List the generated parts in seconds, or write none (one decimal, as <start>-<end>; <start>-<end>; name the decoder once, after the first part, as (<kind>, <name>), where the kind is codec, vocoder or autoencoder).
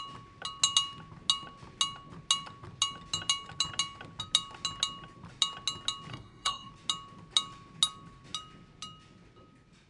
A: 6.1-6.7 (codec, SNAC)